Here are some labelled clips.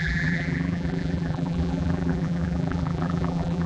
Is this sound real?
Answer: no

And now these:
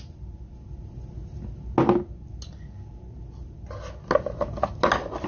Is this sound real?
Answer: yes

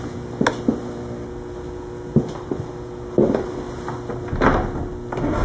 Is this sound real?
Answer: yes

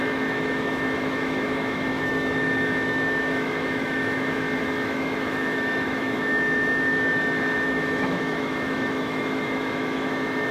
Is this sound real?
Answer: no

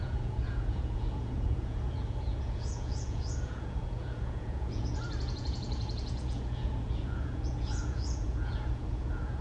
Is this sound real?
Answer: no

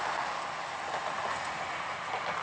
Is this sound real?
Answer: yes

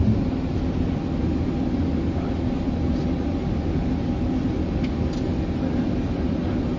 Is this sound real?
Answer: yes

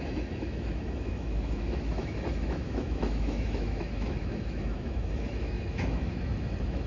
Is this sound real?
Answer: no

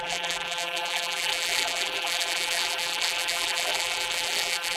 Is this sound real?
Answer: no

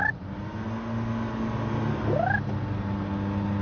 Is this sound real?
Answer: yes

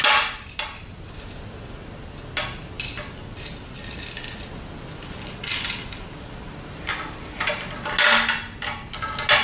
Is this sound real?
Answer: yes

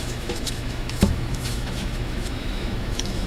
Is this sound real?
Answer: no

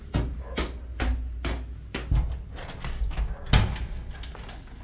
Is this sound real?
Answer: yes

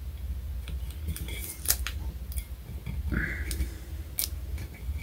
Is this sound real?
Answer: yes